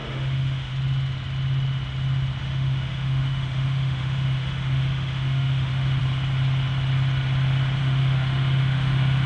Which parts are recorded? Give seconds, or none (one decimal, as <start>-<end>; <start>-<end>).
0.7-2.4; 6.0-7.8